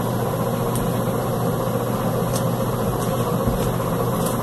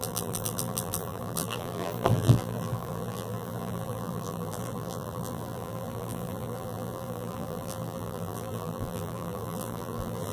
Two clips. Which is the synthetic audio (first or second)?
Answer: second